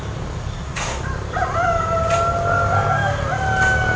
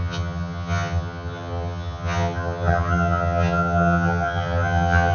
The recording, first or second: first